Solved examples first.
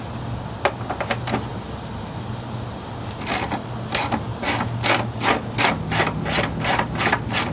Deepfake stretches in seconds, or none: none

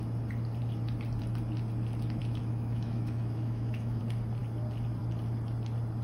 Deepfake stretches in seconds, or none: 2.2-4.0 (autoencoder, DAC-VAE)

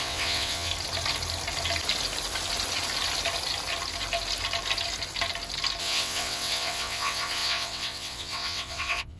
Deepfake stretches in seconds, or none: 0.0-0.7 (vocoder, WaveNeXt); 5.8-9.2

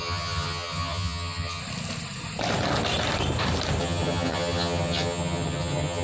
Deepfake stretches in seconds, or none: 0.0-1.6 (vocoder, HiFi-GAN); 3.8-6.0

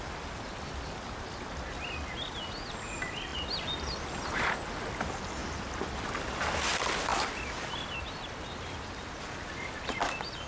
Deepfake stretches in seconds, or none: none